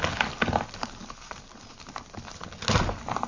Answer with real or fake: real